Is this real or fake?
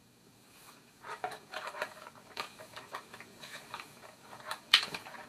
fake